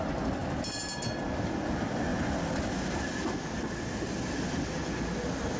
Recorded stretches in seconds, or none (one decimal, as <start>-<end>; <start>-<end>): 0.0-5.6